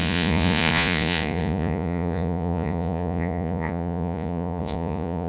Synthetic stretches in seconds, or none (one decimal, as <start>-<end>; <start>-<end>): 0.0-5.3

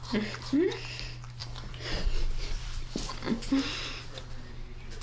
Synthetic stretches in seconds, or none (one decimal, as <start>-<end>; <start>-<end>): 1.4-3.1

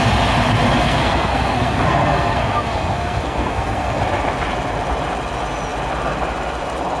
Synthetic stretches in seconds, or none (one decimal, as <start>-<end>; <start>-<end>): 0.8-4.0